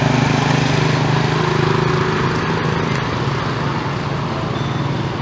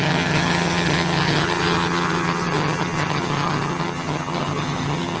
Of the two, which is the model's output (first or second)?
second